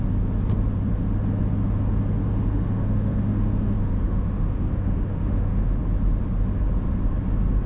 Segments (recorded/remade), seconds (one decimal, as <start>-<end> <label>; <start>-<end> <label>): 0.0-2.2 recorded; 2.2-5.8 remade; 5.8-7.7 recorded